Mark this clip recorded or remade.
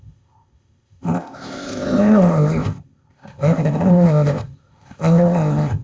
remade